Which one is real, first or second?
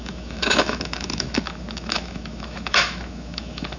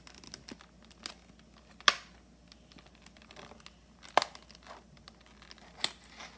second